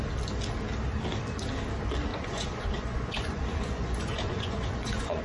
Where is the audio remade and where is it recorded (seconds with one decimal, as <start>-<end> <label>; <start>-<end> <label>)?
0.0-2.1 recorded; 2.1-5.2 remade